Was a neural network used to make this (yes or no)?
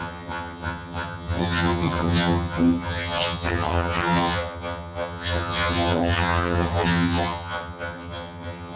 yes